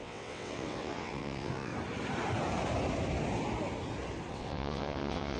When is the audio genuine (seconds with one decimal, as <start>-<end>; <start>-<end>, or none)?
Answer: 1.7-4.3